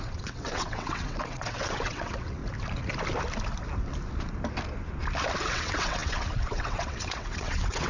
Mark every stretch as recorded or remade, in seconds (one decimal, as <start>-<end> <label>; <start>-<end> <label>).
0.0-2.4 remade; 2.4-5.4 recorded; 5.4-7.9 remade